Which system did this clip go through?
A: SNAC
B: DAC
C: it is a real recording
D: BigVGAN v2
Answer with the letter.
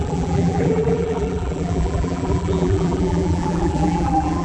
D